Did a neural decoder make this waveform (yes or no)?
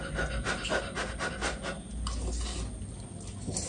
no